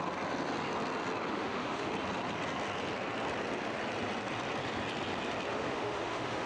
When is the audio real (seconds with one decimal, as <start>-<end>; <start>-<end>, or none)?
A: 0.0-1.3; 1.9-5.5